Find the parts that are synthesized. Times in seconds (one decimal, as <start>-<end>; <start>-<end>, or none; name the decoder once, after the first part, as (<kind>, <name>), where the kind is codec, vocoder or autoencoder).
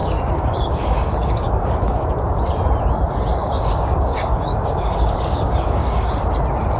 0.0-2.1 (codec, DAC); 3.4-6.1